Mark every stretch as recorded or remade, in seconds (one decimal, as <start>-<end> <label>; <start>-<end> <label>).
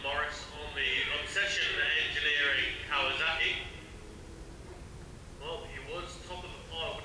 0.0-7.0 recorded